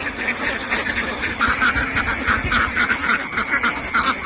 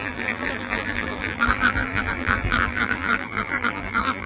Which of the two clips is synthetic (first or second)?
second